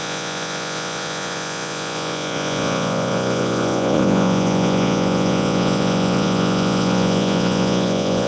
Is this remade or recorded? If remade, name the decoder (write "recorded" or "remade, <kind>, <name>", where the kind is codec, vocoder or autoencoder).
remade, vocoder, Vocos